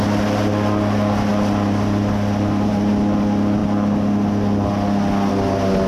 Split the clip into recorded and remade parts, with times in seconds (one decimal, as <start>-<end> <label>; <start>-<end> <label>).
0.0-1.3 recorded; 1.3-2.9 remade; 2.9-5.9 recorded